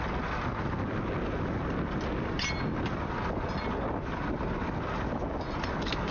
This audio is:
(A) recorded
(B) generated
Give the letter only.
A